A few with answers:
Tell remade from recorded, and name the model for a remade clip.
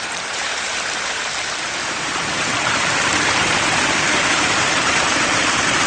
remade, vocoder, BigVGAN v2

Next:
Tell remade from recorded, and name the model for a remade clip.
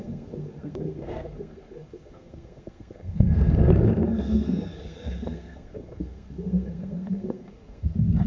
remade, codec, SNAC